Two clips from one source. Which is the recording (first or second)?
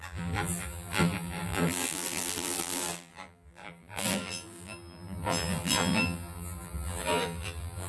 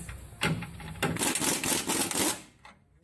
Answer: second